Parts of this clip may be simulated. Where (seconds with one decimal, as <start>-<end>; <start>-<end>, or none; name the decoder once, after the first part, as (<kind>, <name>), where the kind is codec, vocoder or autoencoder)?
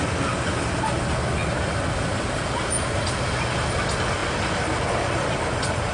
none